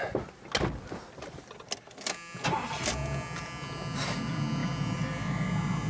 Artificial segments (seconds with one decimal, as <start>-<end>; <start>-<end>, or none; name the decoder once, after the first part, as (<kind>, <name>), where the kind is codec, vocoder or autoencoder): none